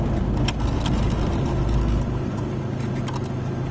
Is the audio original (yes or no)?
yes